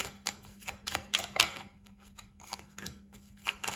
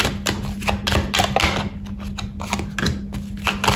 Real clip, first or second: second